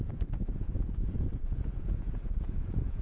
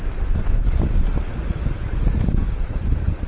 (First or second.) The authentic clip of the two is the second